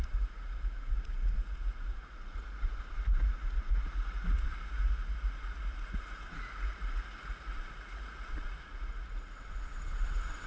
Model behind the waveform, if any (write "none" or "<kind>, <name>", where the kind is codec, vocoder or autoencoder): vocoder, Vocos